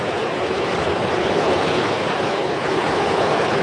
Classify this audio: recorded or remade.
remade